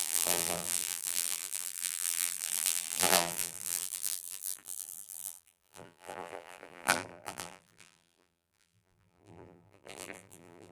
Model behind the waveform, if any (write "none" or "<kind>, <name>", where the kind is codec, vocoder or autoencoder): vocoder, BigVGAN v2